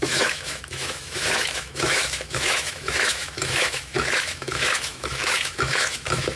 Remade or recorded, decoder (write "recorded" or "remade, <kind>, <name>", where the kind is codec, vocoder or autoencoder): remade, autoencoder, DAC-VAE